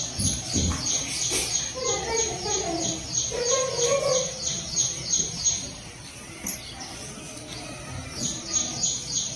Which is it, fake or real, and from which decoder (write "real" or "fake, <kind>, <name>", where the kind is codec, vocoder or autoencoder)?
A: real